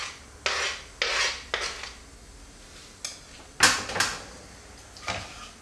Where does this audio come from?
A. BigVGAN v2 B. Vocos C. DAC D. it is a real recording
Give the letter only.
D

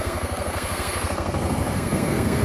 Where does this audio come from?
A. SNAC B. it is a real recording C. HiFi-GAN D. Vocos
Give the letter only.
A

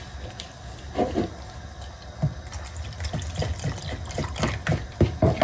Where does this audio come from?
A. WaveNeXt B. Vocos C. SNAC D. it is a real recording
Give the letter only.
D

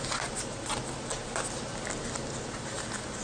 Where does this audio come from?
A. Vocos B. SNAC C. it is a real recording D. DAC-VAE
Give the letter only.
C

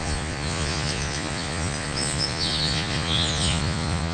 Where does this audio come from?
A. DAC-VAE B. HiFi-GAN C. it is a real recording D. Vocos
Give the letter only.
D